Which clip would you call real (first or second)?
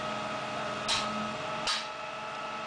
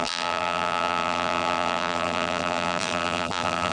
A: first